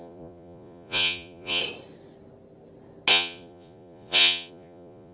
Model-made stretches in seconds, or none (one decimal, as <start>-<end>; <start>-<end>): 0.0-1.6; 3.1-5.1